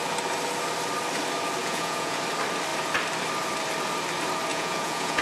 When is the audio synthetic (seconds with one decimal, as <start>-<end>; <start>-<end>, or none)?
1.6-2.2; 4.5-5.2